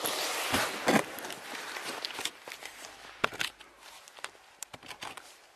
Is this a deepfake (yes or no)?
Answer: no